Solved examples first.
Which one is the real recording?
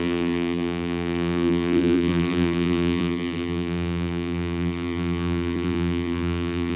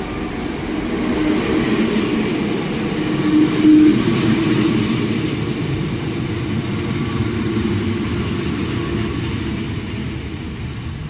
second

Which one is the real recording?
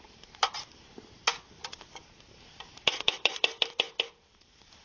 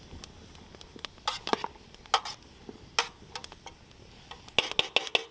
second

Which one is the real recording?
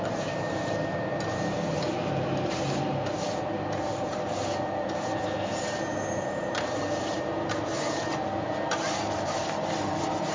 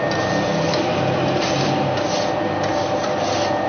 second